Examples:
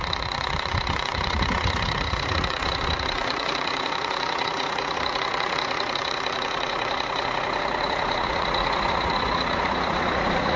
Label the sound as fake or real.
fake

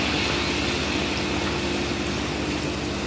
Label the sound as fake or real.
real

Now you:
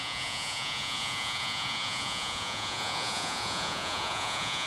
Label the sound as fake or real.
fake